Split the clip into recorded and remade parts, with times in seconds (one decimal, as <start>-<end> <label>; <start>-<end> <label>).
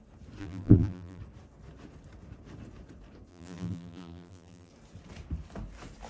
0.0-0.4 recorded; 0.4-1.2 remade; 1.2-3.3 recorded; 3.3-4.7 remade; 4.7-6.1 recorded